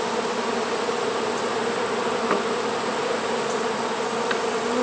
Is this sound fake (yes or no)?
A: no